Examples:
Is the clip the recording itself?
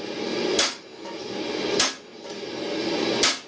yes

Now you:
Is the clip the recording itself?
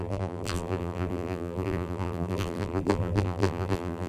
no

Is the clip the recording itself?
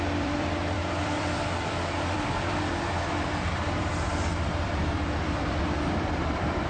no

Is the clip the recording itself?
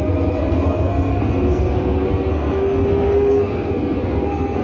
no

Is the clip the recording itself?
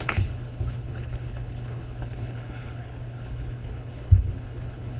no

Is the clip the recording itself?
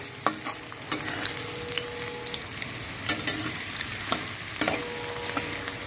yes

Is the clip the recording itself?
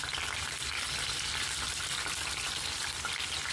yes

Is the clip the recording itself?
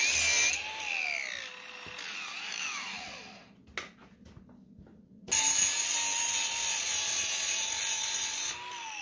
yes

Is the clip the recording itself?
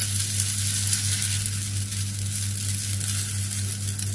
yes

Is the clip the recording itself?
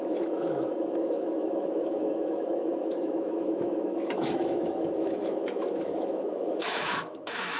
no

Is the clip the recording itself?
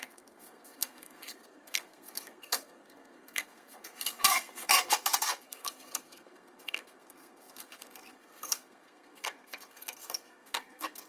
no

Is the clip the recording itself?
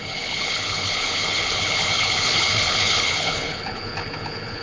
no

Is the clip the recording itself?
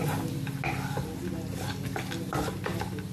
yes